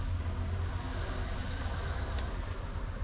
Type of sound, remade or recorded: recorded